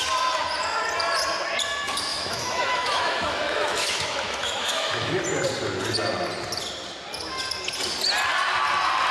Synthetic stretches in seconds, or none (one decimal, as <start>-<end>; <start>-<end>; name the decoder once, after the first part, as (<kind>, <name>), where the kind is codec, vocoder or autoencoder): 2.1-5.2 (autoencoder, DAC-VAE)